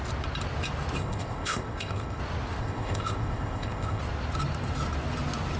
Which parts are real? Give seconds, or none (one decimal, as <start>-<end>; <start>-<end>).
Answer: 0.0-1.0; 2.2-2.6; 4.0-5.6